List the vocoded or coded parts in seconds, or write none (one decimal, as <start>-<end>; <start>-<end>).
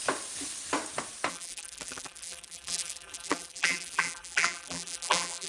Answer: 1.3-5.5